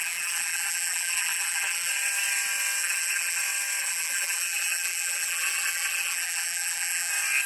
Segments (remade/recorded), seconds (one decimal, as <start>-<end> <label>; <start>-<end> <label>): 0.0-1.9 remade; 1.9-2.8 recorded; 2.8-3.4 remade; 3.4-3.8 recorded; 3.8-7.1 remade; 7.1-7.5 recorded